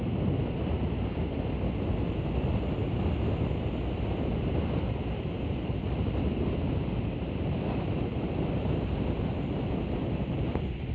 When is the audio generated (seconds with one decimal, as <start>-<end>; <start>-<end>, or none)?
none